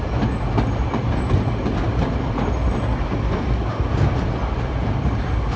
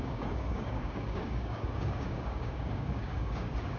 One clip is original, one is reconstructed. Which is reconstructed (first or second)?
second